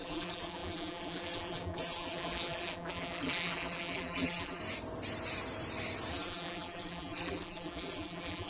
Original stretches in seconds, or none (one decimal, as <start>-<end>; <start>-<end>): 4.6-6.1